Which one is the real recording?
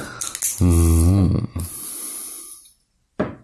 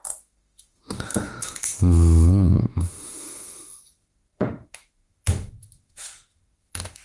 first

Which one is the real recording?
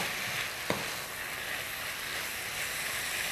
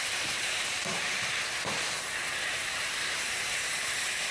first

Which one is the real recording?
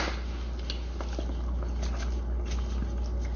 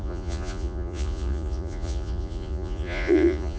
first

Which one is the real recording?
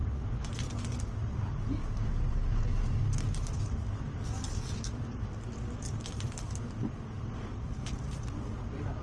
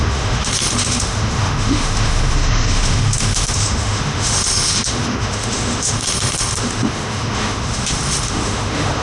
first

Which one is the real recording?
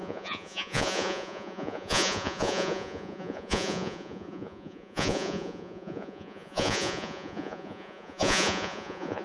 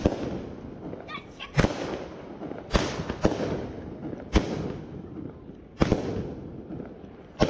second